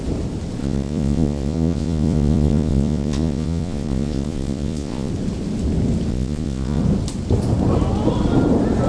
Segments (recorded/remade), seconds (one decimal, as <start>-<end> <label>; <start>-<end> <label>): 0.0-0.6 recorded; 0.6-5.1 remade; 5.1-6.1 recorded; 6.1-6.8 remade; 6.8-8.9 recorded